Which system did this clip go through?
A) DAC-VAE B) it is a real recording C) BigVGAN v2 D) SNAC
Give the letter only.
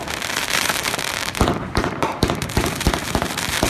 C